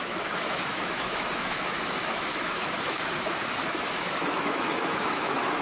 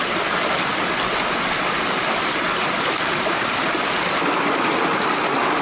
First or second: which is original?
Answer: second